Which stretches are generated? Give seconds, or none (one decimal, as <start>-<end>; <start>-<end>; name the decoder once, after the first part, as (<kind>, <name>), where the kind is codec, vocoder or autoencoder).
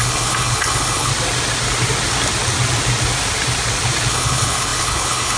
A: 0.0-1.1 (codec, HILCodec); 4.1-5.4